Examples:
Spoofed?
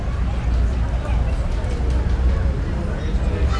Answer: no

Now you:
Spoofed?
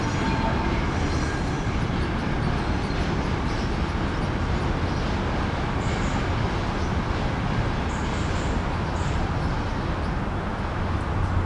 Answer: no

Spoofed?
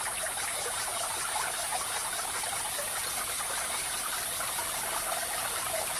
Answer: no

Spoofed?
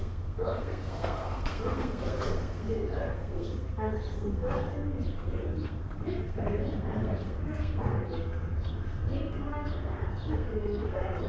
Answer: yes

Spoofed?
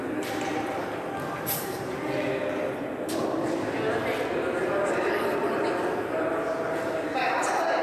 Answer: no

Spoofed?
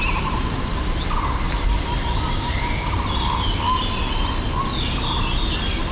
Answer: no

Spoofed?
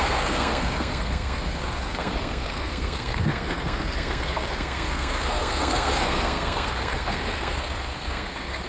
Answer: yes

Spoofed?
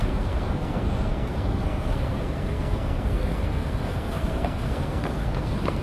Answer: yes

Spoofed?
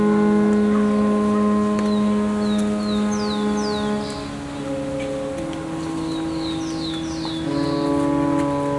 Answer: no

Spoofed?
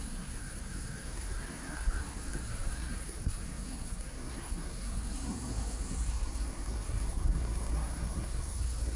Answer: yes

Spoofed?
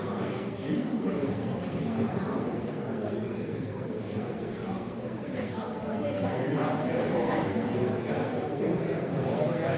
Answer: yes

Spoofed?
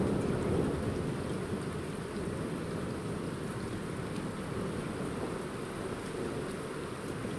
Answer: no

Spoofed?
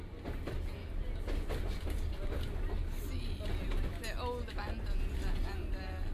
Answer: no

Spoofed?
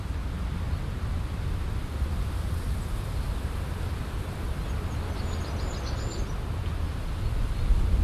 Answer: no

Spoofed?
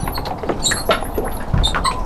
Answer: no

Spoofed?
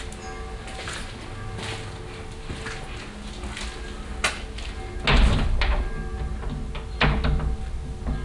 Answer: no